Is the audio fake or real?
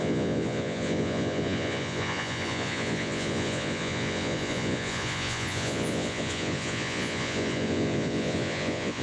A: fake